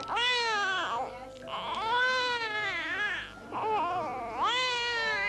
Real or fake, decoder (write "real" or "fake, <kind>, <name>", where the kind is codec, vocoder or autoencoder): real